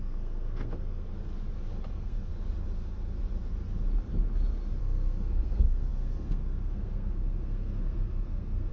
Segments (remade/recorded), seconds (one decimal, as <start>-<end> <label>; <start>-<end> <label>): 0.0-1.1 remade; 1.1-1.9 recorded; 1.9-2.3 remade; 2.3-4.8 recorded; 4.8-8.7 remade